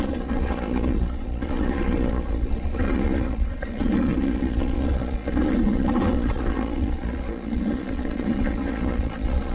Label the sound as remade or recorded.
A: remade